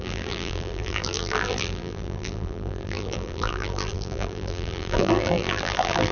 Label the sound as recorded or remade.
remade